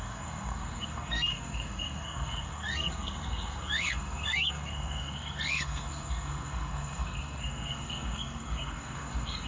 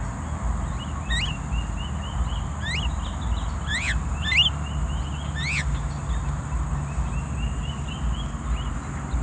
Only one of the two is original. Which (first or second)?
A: second